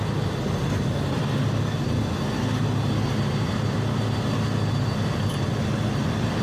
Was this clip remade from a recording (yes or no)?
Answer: no